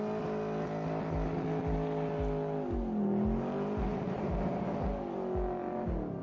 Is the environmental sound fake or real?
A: real